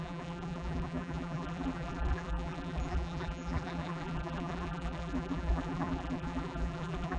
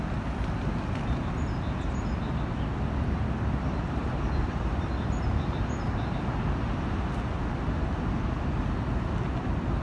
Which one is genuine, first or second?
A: second